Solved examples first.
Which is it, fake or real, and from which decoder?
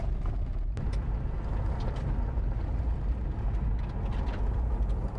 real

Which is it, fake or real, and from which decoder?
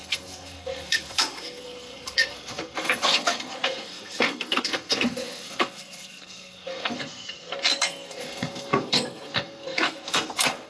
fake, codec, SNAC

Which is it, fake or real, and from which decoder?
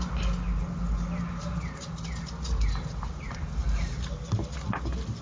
real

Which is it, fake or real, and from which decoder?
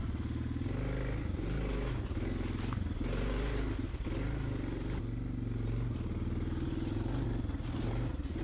real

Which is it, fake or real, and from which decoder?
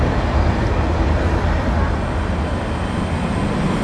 real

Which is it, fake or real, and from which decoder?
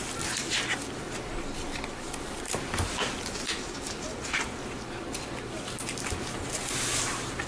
real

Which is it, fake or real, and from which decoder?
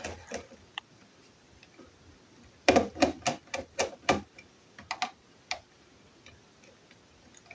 real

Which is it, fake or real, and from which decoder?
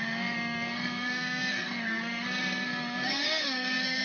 fake, codec, SNAC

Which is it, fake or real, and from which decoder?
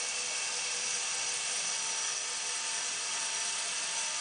real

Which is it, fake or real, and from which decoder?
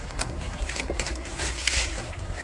fake, codec, SNAC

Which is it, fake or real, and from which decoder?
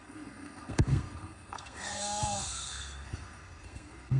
fake, codec, SNAC